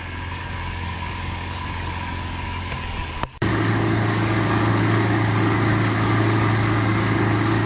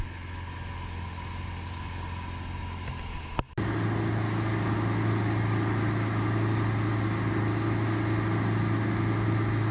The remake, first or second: first